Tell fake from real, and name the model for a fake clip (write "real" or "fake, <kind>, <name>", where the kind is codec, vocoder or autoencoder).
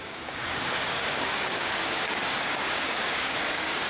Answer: fake, codec, DAC